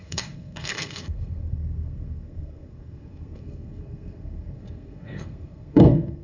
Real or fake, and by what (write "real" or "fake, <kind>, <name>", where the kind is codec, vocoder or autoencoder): fake, codec, SNAC